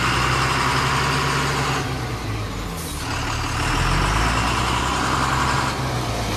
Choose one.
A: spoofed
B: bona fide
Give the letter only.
B